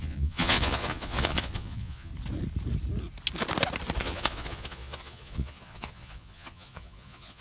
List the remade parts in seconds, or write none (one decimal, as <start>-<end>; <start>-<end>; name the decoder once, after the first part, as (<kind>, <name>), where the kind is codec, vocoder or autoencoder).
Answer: 0.0-2.1 (vocoder, Vocos); 4.0-7.4